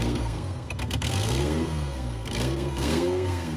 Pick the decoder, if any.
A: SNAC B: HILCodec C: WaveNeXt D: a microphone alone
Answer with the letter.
A